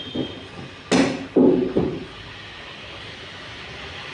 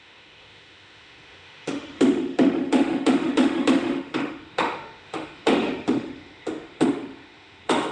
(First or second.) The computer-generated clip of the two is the second